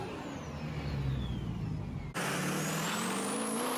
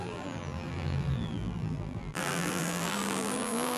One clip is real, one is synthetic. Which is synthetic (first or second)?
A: second